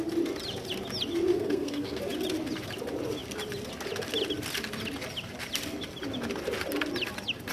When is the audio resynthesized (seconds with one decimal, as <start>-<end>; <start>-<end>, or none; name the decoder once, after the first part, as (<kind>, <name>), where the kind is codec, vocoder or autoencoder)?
1.3-2.0 (codec, SNAC)